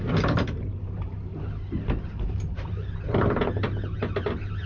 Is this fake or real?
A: real